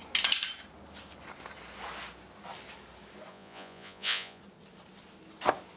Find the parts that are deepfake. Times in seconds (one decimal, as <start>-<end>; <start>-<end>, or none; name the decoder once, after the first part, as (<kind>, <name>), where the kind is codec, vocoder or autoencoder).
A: 3.3-4.4 (vocoder, Vocos)